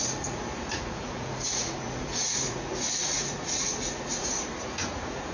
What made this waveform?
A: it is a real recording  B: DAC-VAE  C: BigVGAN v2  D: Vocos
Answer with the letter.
D